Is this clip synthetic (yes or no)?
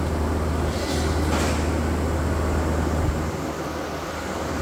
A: no